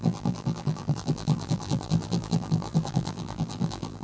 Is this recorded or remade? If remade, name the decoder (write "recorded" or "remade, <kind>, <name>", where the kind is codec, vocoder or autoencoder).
remade, vocoder, BigVGAN v2